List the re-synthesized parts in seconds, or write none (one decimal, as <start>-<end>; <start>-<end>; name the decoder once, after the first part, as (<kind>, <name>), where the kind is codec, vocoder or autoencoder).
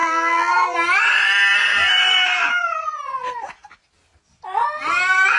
0.0-0.5 (vocoder, BigVGAN v2)